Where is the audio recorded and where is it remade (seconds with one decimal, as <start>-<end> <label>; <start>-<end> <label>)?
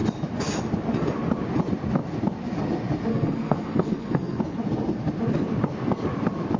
0.0-3.1 recorded; 3.1-4.4 remade; 4.4-6.6 recorded